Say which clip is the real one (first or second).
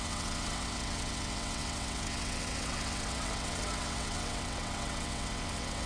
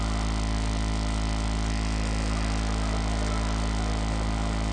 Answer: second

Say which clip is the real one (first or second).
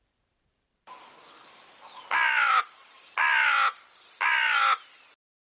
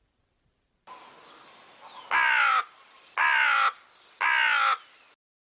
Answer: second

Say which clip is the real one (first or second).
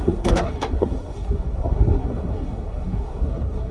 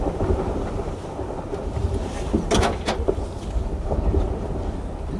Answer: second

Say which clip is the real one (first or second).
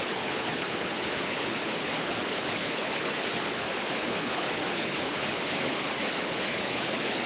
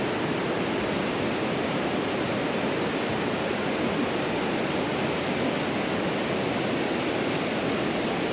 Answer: second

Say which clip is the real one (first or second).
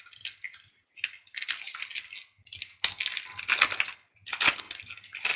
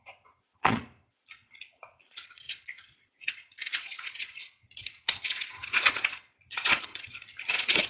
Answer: first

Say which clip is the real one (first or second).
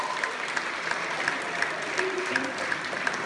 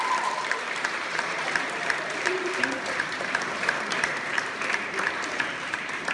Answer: first